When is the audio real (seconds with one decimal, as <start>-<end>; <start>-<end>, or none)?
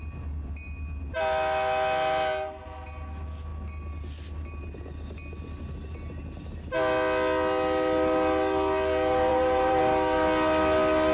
0.0-9.3; 9.8-11.1